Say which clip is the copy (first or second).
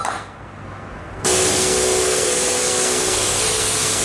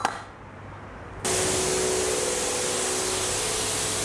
first